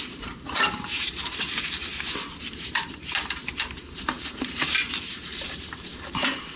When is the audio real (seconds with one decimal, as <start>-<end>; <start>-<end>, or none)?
1.9-2.5

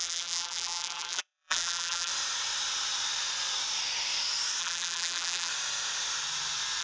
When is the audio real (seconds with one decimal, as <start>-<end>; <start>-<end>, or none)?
2.1-4.6; 5.5-6.8